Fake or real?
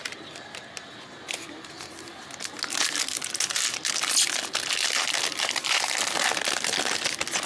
real